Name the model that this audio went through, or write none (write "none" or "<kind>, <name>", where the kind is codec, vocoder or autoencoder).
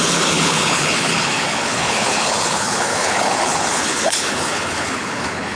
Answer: codec, HILCodec